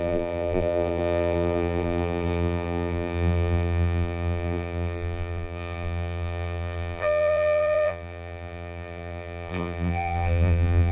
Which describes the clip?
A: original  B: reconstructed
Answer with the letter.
B